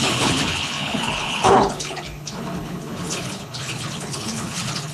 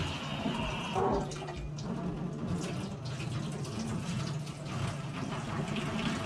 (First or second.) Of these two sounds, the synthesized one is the first